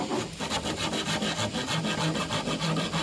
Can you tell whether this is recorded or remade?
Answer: recorded